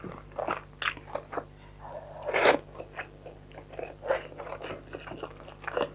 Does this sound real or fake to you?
real